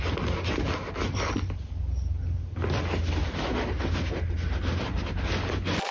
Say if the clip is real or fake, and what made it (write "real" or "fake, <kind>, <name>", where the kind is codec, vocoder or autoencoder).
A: real